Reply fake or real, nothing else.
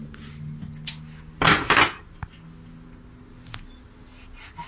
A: real